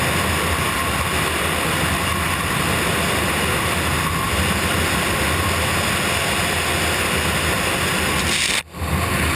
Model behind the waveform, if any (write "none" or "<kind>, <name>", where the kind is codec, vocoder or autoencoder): none